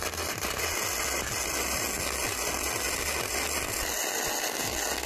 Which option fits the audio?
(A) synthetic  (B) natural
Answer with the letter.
B